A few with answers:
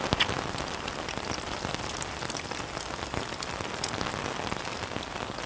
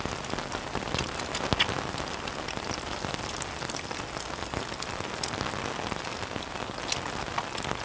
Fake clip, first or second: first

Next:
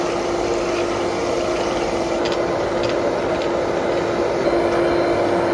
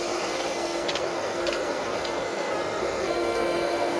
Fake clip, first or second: second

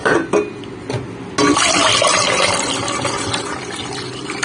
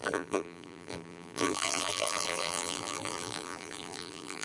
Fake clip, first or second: second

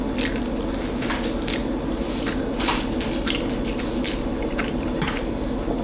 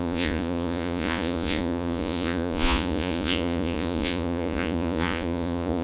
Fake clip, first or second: second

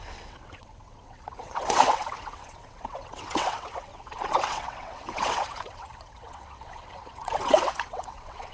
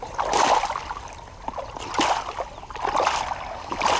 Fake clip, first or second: first